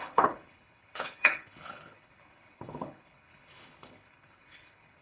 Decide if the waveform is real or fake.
fake